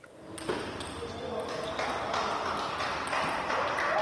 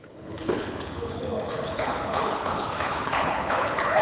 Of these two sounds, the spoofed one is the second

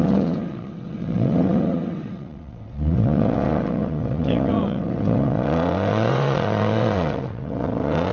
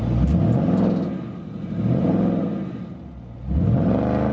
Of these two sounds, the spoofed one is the first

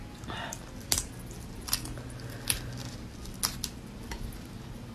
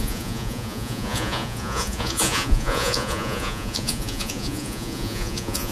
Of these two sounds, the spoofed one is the second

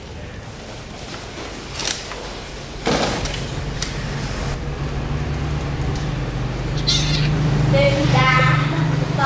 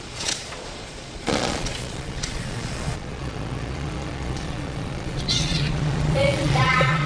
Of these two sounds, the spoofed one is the second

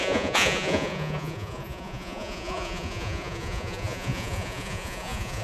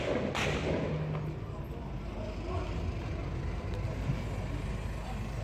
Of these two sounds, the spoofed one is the first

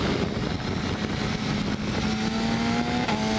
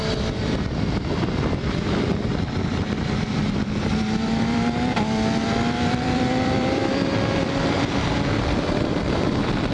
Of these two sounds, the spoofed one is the second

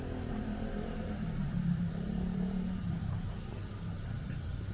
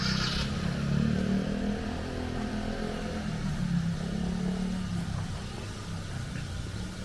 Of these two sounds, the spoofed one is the first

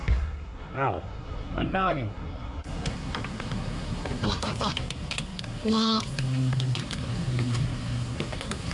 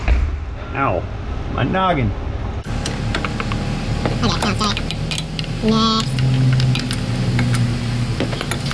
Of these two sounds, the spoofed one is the first